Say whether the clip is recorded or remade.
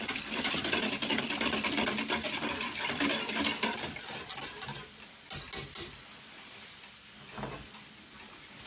recorded